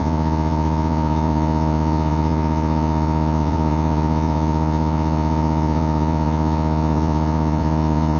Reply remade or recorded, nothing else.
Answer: remade